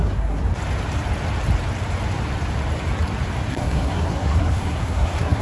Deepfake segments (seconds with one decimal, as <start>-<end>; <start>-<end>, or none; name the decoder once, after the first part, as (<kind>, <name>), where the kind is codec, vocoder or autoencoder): 0.0-0.4 (codec, SNAC); 3.5-5.4